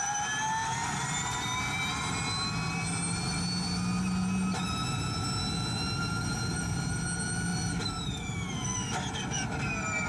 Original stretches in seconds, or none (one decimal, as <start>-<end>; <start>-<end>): 0.0-0.6; 2.0-7.5; 8.2-10.1